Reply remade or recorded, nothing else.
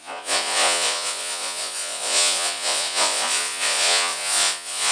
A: remade